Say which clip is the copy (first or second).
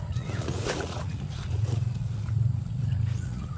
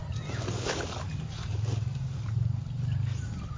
first